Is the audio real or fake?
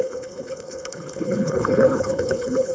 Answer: fake